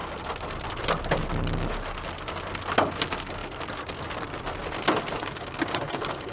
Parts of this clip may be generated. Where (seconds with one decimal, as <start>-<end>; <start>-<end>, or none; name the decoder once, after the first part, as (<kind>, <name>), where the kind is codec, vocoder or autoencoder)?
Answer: 0.0-1.2 (vocoder, BigVGAN v2); 3.4-5.4